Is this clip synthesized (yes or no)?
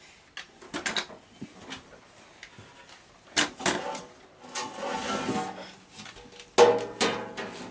no